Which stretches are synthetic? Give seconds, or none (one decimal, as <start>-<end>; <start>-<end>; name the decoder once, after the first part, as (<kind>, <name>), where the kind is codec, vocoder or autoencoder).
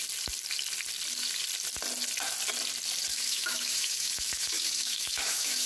3.1-5.7 (autoencoder, DAC-VAE)